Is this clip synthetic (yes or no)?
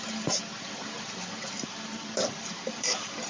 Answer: no